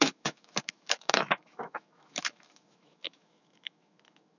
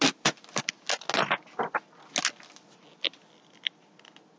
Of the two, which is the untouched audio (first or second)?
second